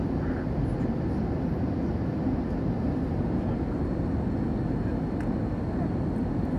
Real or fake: real